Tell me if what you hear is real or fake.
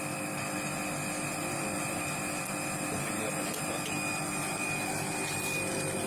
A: real